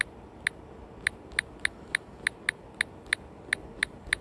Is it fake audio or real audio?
real